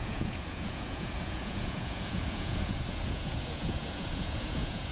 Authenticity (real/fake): fake